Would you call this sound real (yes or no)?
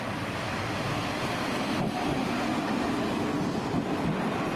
yes